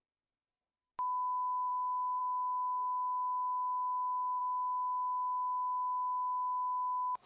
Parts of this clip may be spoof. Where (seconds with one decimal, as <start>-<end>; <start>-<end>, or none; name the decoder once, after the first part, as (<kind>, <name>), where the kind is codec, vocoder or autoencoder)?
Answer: 0.0-0.9 (autoencoder, DAC-VAE); 1.7-7.3